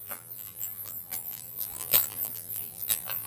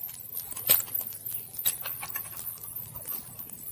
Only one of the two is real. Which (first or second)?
second